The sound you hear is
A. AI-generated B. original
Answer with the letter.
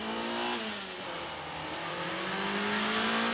B